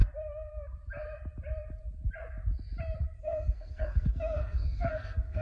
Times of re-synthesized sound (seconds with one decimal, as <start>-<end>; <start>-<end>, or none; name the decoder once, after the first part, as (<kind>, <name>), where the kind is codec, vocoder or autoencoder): 3.2-5.4 (codec, SNAC)